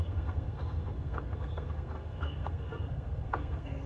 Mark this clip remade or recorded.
remade